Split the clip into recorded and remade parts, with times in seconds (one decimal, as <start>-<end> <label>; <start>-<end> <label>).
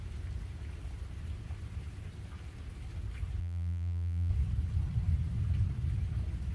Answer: 0.0-3.4 recorded; 3.4-4.3 remade; 4.3-6.5 recorded